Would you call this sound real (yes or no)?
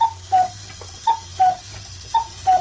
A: yes